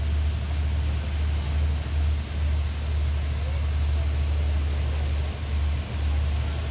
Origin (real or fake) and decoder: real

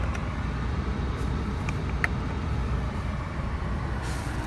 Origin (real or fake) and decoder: real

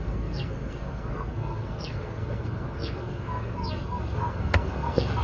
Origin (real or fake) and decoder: fake, codec, SNAC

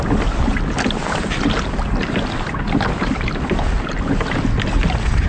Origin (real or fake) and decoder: real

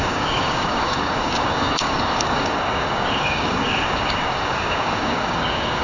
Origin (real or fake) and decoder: fake, codec, DAC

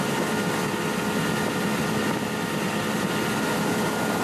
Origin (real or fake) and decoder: real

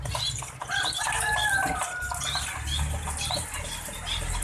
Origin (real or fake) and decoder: real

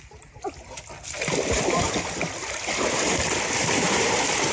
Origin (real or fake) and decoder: fake, vocoder, BigVGAN v2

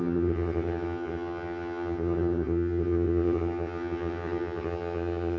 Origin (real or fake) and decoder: fake, vocoder, HiFi-GAN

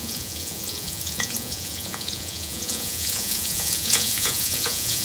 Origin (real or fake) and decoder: fake, vocoder, Vocos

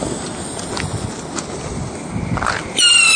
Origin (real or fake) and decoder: real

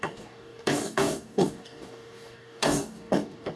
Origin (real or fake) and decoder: fake, codec, DAC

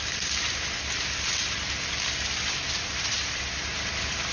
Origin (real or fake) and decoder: fake, vocoder, BigVGAN v2